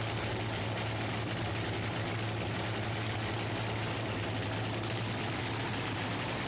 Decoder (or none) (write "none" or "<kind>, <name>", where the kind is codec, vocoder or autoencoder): none